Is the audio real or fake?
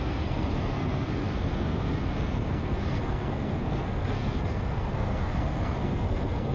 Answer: fake